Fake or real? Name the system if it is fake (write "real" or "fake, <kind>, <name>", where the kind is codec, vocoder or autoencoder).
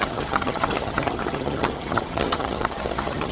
fake, vocoder, HiFi-GAN